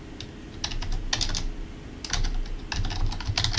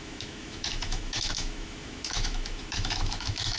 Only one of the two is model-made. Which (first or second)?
second